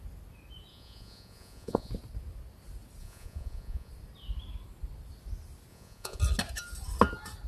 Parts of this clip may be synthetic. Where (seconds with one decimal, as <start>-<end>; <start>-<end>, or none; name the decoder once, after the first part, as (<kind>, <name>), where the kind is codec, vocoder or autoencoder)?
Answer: 0.7-1.9 (vocoder, Vocos); 3.0-3.9; 5.7-6.2